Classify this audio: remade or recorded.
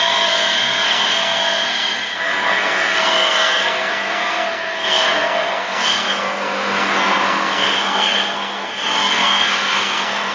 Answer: remade